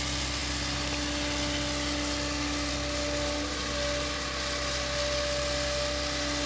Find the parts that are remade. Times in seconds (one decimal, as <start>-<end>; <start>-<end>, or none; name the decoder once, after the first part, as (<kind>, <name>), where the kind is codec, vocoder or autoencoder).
none